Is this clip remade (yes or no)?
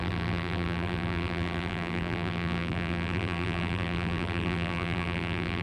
yes